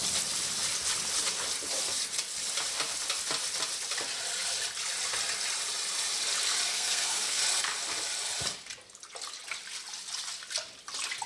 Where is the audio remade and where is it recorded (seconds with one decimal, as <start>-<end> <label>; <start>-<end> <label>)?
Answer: 0.0-6.7 recorded; 6.7-7.4 remade; 7.4-11.3 recorded

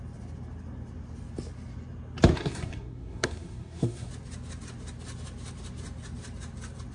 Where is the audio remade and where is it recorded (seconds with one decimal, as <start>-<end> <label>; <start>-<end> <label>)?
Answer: 0.0-2.4 recorded; 2.4-4.1 remade; 4.1-6.9 recorded

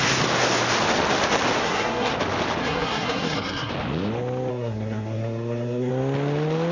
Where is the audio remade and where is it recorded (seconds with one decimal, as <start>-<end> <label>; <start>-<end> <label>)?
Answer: 0.0-1.6 recorded; 1.6-2.1 remade; 2.1-2.6 recorded; 2.6-3.7 remade; 3.7-4.5 recorded; 4.5-5.9 remade; 5.9-6.7 recorded

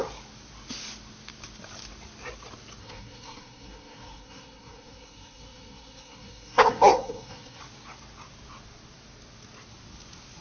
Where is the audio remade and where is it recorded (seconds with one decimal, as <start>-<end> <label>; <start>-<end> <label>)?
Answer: 0.0-2.8 recorded; 2.8-7.6 remade; 7.6-10.4 recorded

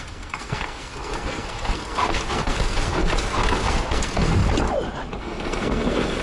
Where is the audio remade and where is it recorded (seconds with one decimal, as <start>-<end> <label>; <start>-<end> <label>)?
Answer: 0.0-4.4 remade; 4.4-5.2 recorded; 5.2-6.2 remade